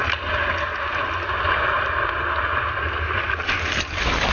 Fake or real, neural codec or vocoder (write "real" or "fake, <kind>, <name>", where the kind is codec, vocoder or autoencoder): real